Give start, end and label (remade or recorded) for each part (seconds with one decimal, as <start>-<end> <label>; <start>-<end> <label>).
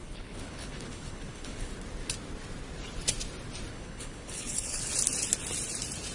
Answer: 0.0-1.7 remade; 1.7-3.7 recorded; 3.7-4.9 remade; 4.9-6.1 recorded